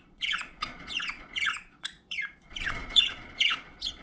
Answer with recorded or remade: remade